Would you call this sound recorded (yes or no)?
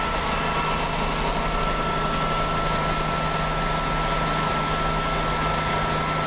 yes